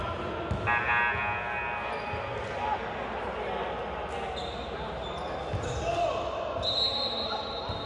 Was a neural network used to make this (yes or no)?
no